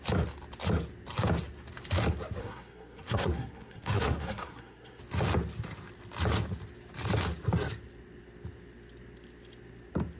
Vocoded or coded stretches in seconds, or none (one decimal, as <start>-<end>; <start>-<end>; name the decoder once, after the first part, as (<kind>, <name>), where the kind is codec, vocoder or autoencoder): 2.4-5.0 (codec, SNAC)